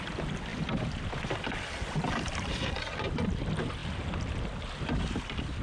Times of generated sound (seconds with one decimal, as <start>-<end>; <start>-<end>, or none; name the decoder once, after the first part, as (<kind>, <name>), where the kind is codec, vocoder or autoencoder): 0.5-1.4 (vocoder, BigVGAN v2); 3.8-4.4

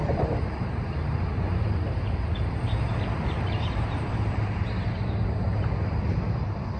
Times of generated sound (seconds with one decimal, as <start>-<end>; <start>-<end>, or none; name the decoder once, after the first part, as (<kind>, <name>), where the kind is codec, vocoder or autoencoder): 0.0-5.5 (vocoder, BigVGAN v2)

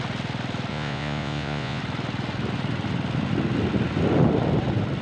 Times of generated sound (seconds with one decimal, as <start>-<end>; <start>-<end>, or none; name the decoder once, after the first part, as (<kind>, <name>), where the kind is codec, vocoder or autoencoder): 0.7-1.8 (vocoder, Vocos)

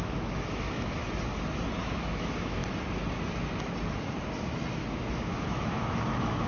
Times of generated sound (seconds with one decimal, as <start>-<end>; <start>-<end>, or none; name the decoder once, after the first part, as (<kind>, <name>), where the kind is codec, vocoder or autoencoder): 0.0-1.0 (autoencoder, DAC-VAE); 1.8-2.6; 4.9-6.5